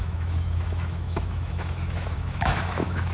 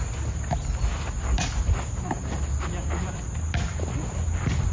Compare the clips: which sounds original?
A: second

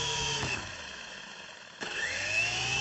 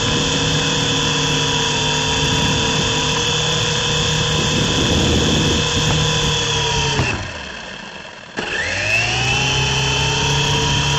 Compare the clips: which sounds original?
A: second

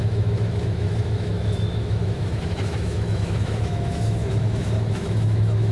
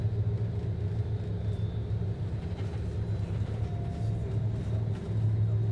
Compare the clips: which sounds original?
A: second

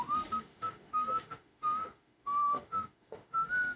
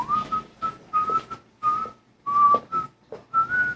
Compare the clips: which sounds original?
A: second